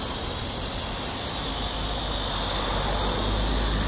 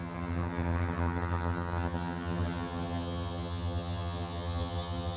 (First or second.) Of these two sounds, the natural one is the first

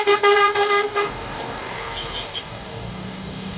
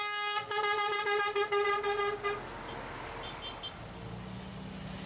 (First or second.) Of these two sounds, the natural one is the second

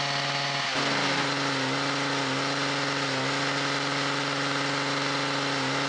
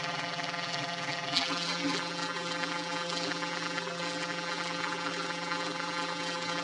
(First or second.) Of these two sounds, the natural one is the first